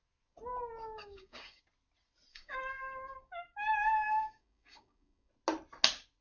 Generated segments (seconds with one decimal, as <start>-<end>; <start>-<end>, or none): 1.0-1.6; 2.3-5.3